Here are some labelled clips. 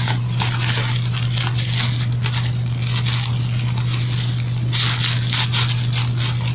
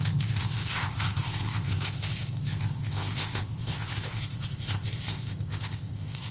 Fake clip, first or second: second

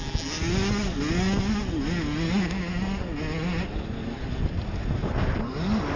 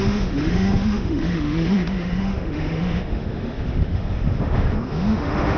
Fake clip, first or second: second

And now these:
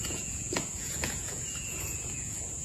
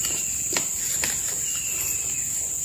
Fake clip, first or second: first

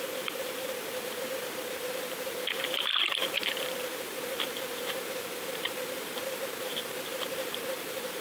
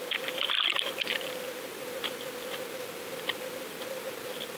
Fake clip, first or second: first